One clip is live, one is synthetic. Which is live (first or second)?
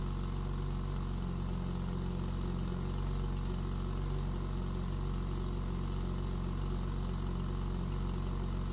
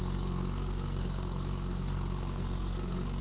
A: first